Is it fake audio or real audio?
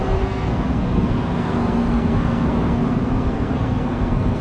fake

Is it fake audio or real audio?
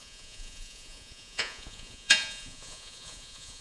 fake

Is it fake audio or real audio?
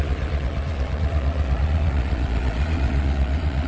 fake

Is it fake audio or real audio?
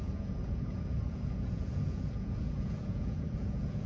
fake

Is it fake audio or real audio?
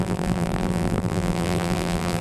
fake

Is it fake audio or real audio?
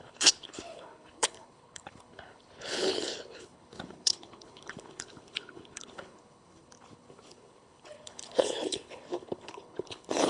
fake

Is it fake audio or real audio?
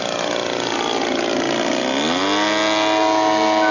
real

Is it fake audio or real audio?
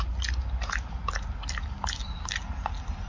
real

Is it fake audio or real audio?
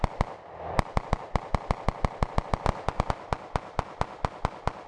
real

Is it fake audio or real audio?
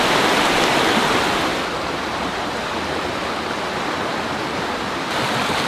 real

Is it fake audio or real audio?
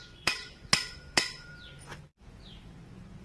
fake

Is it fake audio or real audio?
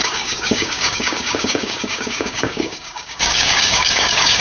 fake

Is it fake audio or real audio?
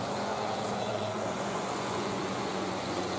fake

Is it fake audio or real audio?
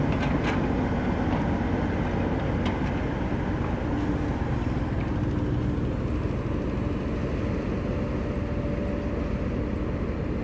real